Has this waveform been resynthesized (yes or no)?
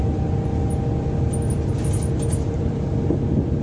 no